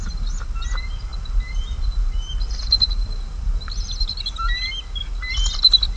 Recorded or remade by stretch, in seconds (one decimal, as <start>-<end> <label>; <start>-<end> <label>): 0.0-6.0 recorded